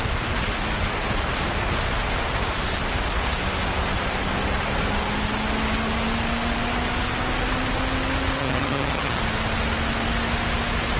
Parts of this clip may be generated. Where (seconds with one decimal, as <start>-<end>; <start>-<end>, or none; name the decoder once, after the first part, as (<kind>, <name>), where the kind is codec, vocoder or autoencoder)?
8.4-9.2 (vocoder, HiFi-GAN)